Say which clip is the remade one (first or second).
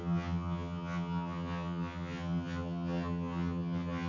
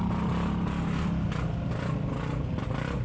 first